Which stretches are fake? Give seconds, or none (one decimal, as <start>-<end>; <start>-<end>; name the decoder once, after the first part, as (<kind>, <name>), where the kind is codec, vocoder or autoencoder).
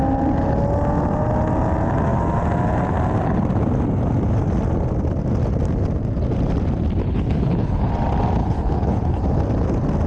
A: 7.0-7.9 (codec, HILCodec); 8.4-9.2